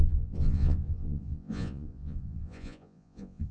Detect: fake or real fake